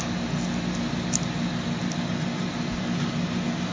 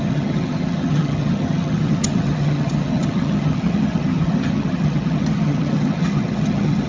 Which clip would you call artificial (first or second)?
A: second